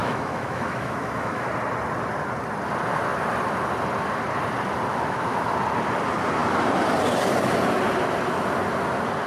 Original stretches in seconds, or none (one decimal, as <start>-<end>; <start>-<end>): 1.5-4.9; 5.5-9.3